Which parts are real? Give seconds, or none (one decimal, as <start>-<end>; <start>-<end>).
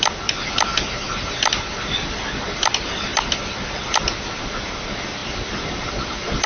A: 0.0-6.5